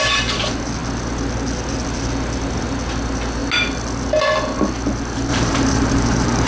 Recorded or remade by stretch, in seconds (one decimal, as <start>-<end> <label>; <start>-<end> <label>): 0.0-5.3 recorded; 5.3-6.5 remade